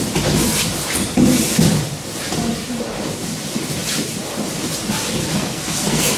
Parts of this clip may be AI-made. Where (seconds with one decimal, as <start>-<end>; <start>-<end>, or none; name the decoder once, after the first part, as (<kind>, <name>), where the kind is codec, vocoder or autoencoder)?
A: 5.2-6.2 (codec, SNAC)